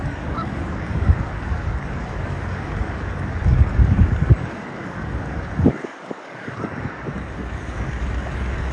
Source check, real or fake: fake